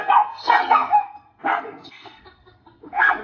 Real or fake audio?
fake